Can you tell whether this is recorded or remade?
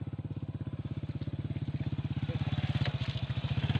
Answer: recorded